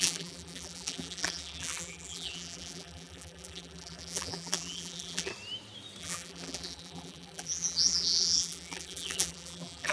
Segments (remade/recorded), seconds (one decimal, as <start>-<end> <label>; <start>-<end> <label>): 0.0-5.3 remade; 5.3-6.0 recorded; 6.0-9.9 remade